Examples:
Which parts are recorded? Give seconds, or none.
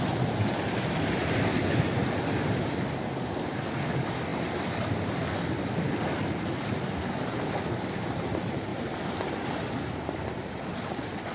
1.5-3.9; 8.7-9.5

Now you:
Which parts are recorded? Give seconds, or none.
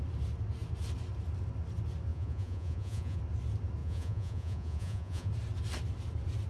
0.0-2.1; 3.2-3.8; 5.3-6.5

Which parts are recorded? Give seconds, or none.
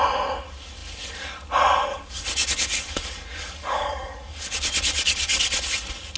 0.0-1.9; 5.4-6.2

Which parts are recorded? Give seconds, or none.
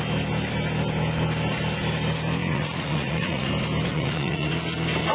0.0-2.4; 3.5-3.9; 4.5-5.1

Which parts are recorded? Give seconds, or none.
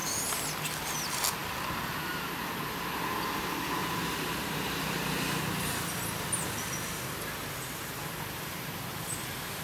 0.0-3.8; 5.4-9.6